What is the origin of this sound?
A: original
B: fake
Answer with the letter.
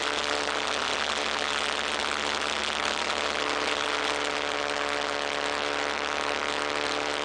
A